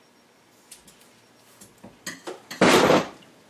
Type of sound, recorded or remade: recorded